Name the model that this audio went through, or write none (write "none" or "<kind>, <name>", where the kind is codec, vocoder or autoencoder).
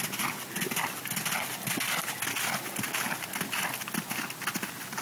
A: none